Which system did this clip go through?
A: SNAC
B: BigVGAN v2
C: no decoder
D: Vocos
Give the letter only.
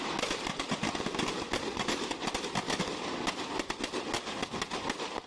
C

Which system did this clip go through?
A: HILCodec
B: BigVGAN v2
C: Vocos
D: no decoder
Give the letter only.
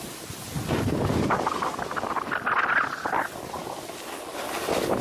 D